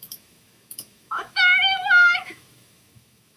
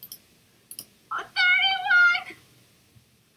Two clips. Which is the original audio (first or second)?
second